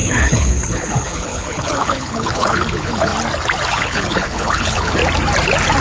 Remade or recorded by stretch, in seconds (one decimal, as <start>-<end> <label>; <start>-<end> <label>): 0.0-3.1 remade; 3.1-3.7 recorded; 3.7-5.0 remade; 5.0-5.8 recorded